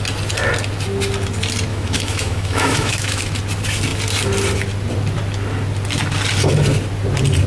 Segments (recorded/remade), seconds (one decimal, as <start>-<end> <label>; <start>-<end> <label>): 0.0-1.7 recorded; 1.7-3.2 remade; 3.2-7.5 recorded